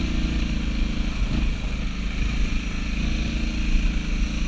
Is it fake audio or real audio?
real